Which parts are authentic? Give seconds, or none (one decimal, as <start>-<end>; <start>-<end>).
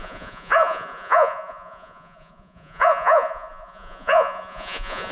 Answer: none